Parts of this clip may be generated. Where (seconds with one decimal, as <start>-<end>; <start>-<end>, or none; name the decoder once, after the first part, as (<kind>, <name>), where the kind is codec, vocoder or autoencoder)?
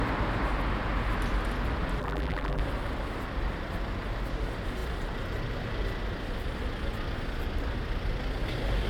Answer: 2.0-2.6 (vocoder, BigVGAN v2)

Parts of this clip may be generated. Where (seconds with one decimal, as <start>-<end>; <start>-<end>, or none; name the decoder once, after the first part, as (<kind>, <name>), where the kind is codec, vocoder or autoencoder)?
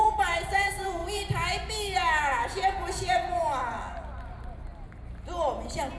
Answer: 0.0-1.0 (vocoder, Vocos); 2.2-3.4; 5.5-6.0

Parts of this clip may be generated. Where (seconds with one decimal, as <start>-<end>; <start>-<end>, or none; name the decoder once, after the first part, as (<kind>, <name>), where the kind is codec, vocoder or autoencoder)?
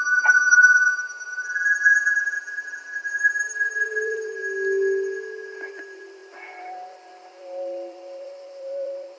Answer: 0.0-4.4 (vocoder, BigVGAN v2); 5.7-9.2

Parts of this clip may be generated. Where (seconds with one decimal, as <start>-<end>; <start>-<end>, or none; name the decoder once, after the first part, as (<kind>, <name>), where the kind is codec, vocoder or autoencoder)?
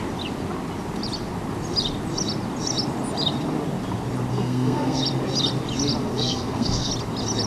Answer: 4.3-5.0 (codec, SNAC); 6.0-6.9